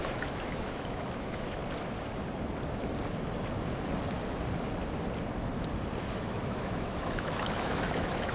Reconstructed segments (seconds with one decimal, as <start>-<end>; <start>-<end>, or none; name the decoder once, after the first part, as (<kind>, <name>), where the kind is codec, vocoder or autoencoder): 0.0-1.6 (autoencoder, DAC-VAE); 6.1-8.3